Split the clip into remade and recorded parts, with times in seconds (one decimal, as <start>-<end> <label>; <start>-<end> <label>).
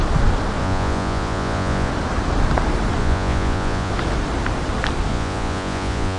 0.0-0.6 recorded; 0.6-1.9 remade; 1.9-3.0 recorded; 3.0-3.9 remade; 3.9-5.1 recorded; 5.1-6.2 remade